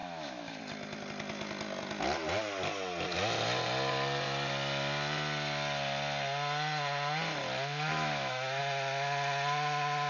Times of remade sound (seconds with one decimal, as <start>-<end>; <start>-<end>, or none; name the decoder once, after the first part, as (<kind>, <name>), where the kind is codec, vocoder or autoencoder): 0.0-0.6 (autoencoder, DAC-VAE); 7.9-8.6